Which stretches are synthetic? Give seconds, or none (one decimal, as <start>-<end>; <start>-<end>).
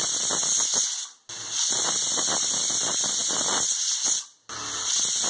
none